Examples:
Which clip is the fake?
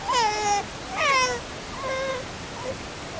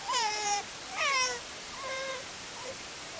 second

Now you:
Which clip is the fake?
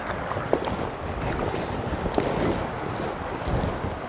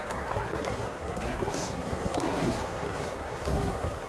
second